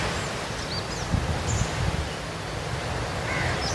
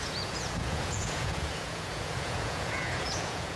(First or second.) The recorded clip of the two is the first